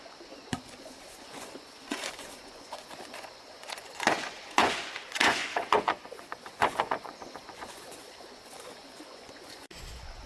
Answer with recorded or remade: remade